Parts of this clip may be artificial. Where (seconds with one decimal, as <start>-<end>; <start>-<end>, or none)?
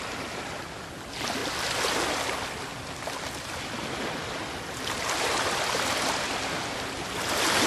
none